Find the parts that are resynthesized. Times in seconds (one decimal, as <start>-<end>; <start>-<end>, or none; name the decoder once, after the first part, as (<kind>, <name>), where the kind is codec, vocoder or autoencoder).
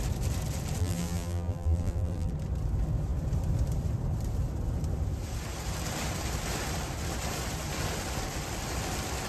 0.8-2.3 (vocoder, BigVGAN v2)